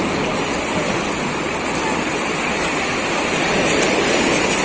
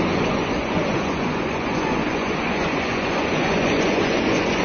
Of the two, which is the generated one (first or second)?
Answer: second